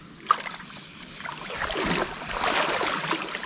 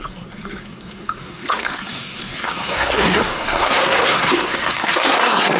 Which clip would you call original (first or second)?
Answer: first